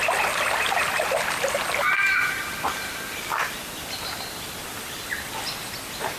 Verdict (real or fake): real